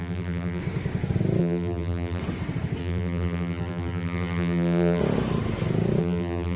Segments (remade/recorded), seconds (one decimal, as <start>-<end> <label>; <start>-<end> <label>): 0.0-0.6 remade; 0.6-1.4 recorded; 1.4-2.2 remade; 2.2-2.8 recorded; 2.8-5.0 remade; 5.0-6.0 recorded; 6.0-6.6 remade